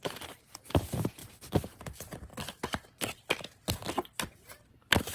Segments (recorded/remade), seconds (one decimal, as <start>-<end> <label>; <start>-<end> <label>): 0.0-2.3 recorded; 2.3-3.2 remade; 3.2-5.1 recorded